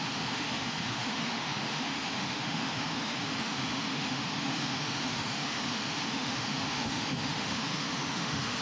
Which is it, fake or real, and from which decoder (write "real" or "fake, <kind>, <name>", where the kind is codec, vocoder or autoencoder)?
fake, autoencoder, DAC-VAE